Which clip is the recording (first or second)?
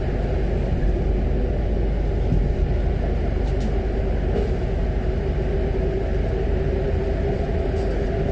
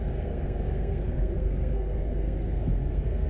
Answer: first